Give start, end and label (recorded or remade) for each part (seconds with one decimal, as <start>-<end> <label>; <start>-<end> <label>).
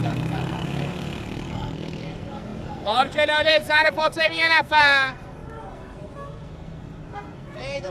0.0-7.9 remade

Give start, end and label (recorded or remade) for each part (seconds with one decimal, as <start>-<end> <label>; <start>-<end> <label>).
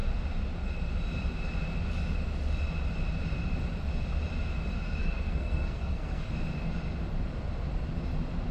0.0-5.0 recorded; 5.0-6.3 remade; 6.3-8.5 recorded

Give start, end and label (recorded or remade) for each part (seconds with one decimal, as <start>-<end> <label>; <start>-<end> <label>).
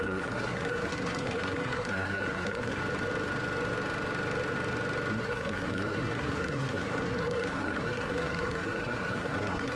0.0-2.8 remade; 2.8-5.2 recorded; 5.2-9.8 remade